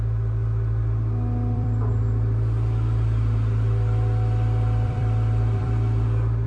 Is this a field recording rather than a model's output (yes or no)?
no